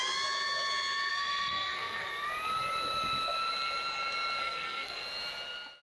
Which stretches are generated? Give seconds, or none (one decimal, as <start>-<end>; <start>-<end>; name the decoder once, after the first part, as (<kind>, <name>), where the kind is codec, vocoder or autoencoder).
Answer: 1.1-2.1 (codec, SNAC); 4.4-5.0